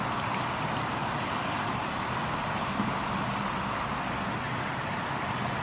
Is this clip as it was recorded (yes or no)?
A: yes